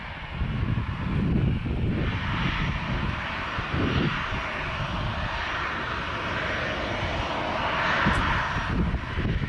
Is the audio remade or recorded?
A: recorded